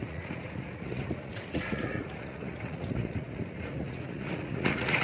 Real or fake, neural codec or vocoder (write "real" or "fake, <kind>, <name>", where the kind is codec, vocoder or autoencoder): fake, vocoder, Vocos